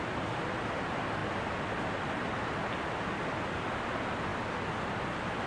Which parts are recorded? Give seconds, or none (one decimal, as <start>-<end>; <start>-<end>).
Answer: 0.0-5.5